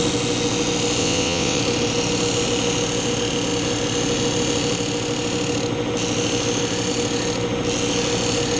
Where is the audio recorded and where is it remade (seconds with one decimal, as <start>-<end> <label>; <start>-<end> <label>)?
0.0-1.0 recorded; 1.0-1.6 remade; 1.6-8.6 recorded